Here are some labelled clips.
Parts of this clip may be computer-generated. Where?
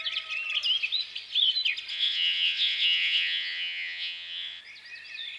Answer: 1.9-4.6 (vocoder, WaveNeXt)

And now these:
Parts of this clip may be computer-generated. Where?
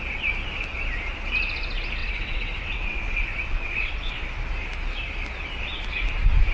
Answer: 2.0-4.1 (vocoder, WaveNeXt)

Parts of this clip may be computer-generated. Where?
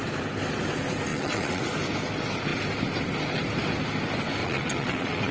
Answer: 1.1-1.6 (vocoder, WaveNeXt); 4.4-5.3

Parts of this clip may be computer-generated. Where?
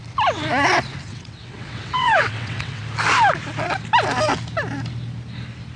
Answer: 1.1-2.8 (vocoder, WaveNeXt)